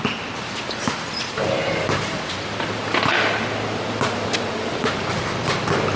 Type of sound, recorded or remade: recorded